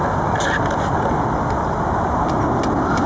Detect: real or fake real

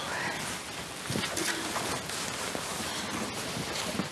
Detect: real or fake real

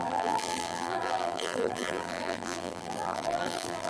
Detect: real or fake fake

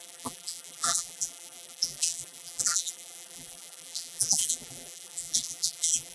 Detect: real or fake fake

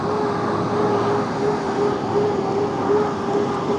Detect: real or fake real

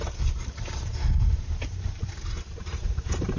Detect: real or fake fake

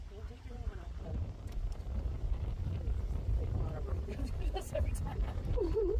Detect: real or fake real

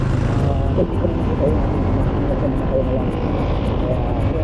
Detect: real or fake real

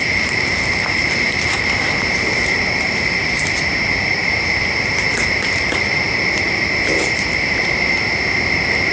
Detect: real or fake fake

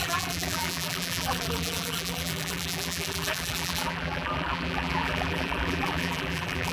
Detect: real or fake fake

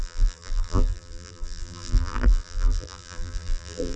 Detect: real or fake fake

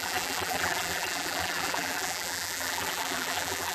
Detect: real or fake fake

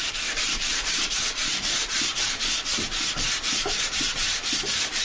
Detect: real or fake fake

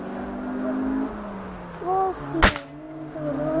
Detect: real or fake real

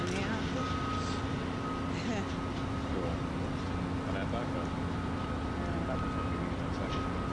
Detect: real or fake real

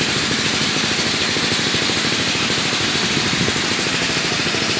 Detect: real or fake fake